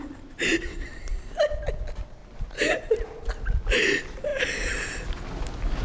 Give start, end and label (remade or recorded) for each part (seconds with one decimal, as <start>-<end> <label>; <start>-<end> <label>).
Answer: 0.0-0.5 recorded; 0.5-1.1 remade; 1.1-2.2 recorded; 2.2-3.3 remade; 3.3-5.8 recorded